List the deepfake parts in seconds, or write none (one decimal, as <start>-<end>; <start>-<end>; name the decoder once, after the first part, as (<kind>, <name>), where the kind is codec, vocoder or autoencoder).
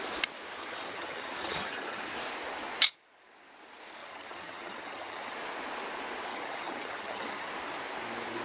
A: 0.6-2.0 (vocoder, HiFi-GAN); 4.0-5.3; 6.3-7.5